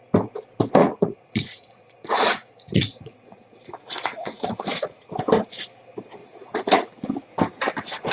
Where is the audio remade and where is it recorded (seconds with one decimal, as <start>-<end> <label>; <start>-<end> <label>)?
0.0-0.8 recorded; 0.8-5.1 remade; 5.1-6.2 recorded; 6.2-6.9 remade; 6.9-8.1 recorded